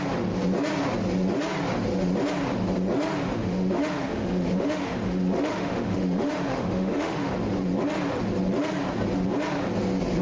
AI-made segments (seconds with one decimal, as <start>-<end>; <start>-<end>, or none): 3.4-7.3